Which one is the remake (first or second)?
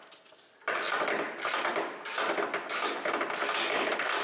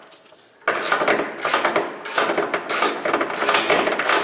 first